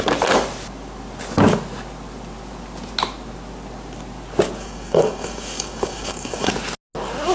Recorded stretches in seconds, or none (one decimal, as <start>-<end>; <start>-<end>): 0.0-4.6; 6.5-7.3